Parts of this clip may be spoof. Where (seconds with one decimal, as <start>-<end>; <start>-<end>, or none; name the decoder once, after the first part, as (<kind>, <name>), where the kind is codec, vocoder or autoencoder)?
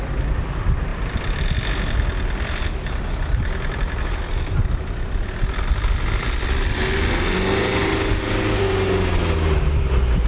0.9-4.2 (vocoder, BigVGAN v2); 7.8-8.4